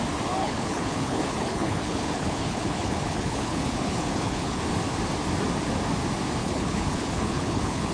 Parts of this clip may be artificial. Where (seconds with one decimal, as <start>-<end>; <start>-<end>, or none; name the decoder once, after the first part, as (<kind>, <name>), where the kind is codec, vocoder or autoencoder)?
0.4-4.6 (codec, HILCodec); 6.4-7.9